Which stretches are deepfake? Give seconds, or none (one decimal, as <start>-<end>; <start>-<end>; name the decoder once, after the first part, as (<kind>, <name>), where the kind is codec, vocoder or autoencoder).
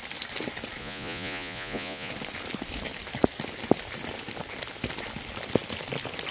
0.8-2.1 (vocoder, Vocos)